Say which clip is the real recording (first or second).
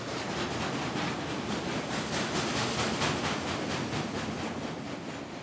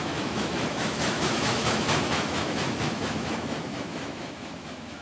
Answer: first